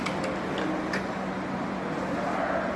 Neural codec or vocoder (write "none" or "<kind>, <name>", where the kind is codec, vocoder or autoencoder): none